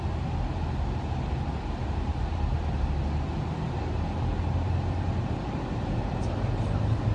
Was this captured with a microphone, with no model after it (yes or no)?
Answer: yes